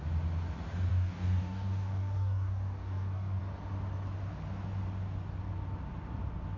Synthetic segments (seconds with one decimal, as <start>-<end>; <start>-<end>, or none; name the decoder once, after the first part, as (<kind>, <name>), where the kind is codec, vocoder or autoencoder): 0.9-3.4 (codec, DAC)

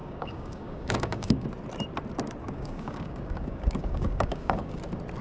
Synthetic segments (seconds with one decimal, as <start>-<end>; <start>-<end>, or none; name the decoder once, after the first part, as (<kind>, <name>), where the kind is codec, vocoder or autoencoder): 0.0-1.5 (codec, DAC); 2.4-4.8

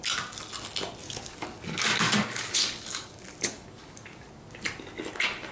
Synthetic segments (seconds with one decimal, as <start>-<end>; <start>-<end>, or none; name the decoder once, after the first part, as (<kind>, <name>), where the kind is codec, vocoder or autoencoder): 1.0-4.3 (codec, DAC)

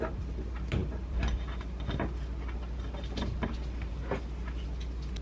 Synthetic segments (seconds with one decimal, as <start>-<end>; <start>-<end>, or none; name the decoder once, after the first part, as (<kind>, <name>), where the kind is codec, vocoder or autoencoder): none

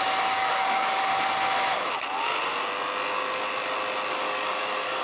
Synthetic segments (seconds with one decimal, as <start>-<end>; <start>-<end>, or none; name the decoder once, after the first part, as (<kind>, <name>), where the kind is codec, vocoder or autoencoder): 0.0-1.1 (codec, DAC); 4.1-5.0